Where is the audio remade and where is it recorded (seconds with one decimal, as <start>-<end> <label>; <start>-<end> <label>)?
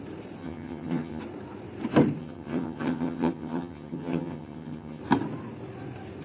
0.0-0.4 recorded; 0.4-1.2 remade; 1.2-2.2 recorded; 2.2-5.0 remade; 5.0-6.2 recorded